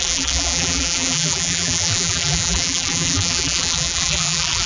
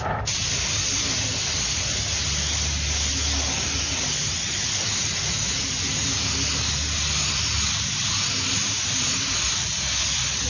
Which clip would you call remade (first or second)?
first